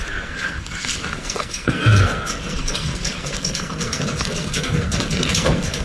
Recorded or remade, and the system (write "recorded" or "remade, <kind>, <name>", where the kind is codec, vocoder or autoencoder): remade, codec, SNAC